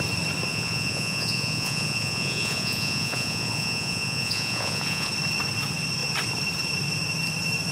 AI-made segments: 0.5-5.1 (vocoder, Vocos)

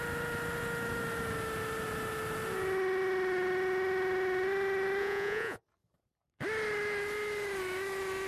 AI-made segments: 5.0-5.6 (vocoder, Vocos)